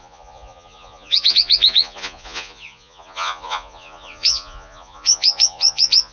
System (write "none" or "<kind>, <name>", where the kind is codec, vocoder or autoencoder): vocoder, Vocos